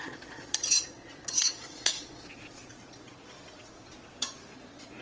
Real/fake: fake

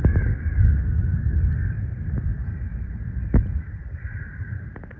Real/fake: real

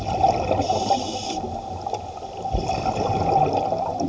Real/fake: real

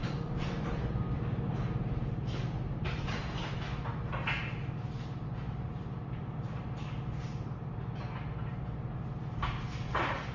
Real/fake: real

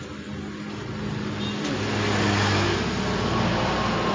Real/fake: real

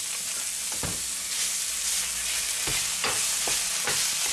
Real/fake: real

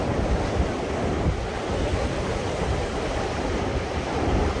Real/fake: real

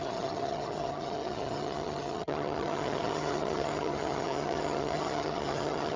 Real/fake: fake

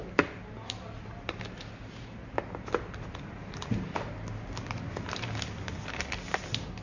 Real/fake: real